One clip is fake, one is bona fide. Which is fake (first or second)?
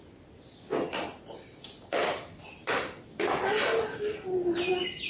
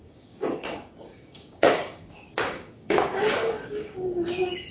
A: second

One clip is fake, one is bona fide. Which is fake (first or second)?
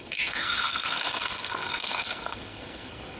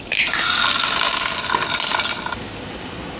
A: first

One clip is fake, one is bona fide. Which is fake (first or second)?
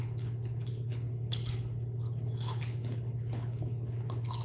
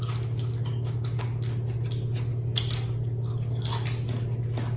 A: first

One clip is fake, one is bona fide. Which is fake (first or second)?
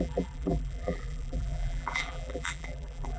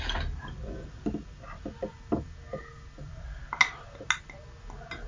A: first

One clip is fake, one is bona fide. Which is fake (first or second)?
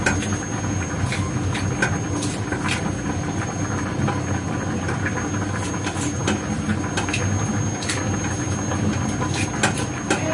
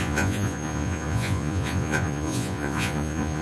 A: second